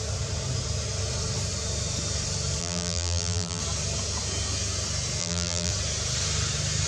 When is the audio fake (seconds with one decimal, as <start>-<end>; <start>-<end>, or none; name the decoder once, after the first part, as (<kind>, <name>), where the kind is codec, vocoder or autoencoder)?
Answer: 2.6-3.6 (vocoder, BigVGAN v2); 5.2-5.7